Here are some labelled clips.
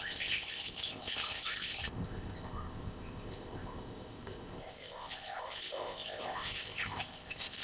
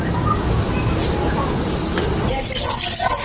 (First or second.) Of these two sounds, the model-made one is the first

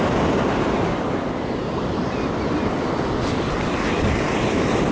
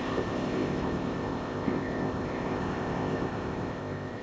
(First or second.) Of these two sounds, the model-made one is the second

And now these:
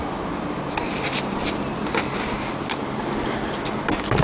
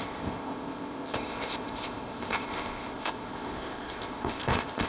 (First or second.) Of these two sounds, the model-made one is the second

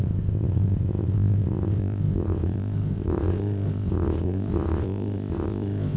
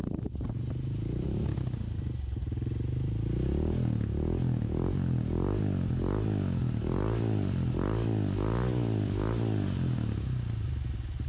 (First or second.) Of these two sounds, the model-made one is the first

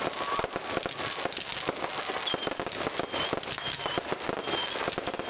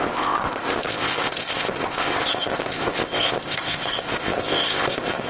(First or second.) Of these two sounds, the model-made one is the second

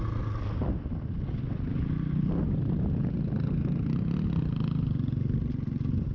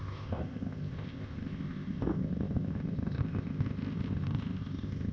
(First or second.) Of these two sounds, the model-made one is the second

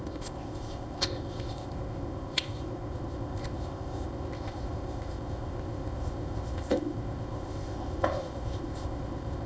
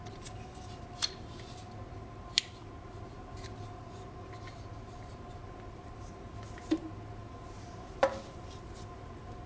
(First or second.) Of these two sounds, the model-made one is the first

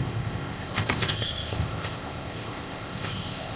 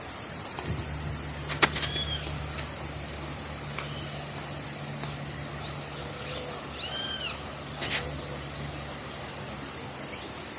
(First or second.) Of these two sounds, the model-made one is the first